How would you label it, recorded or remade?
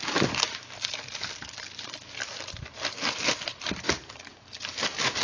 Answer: recorded